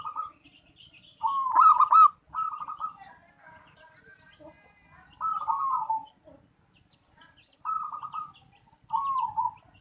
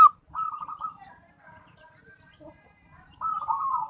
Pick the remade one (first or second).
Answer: second